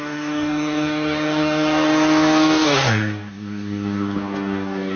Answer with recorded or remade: remade